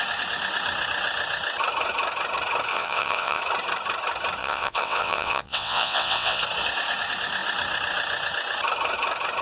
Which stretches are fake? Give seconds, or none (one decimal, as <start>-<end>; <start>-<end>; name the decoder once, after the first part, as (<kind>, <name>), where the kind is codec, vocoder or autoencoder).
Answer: 2.7-3.4 (vocoder, WaveNeXt); 4.4-6.4